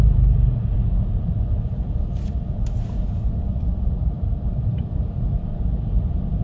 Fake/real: fake